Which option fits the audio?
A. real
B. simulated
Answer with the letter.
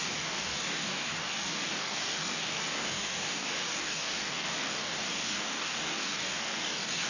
B